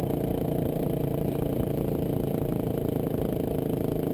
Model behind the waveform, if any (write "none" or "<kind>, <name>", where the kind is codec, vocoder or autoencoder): vocoder, BigVGAN v2